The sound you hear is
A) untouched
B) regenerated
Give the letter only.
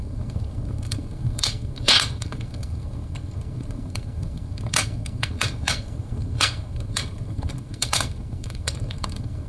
B